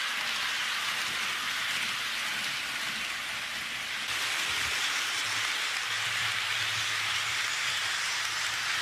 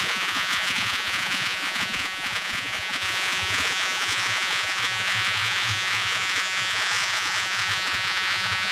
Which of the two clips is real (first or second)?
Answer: first